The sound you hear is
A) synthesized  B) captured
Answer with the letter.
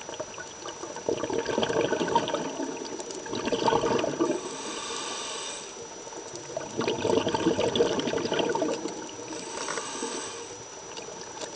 B